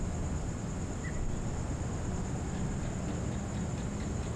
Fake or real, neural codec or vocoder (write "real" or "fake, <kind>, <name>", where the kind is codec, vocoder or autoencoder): real